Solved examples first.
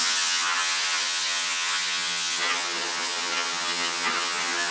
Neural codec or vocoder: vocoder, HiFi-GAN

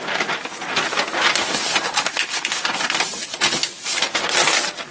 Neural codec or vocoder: none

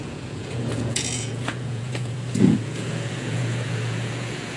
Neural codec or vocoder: vocoder, Vocos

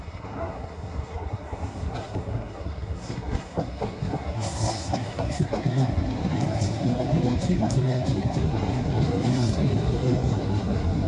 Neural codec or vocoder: codec, SNAC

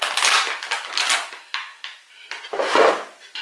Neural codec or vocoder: none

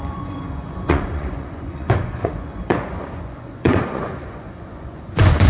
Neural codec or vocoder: vocoder, Vocos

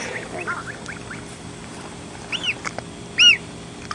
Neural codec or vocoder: none